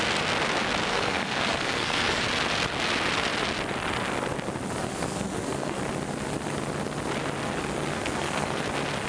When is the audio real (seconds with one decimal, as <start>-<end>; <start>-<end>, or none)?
0.0-0.9; 2.2-4.8; 5.8-7.9; 8.6-9.1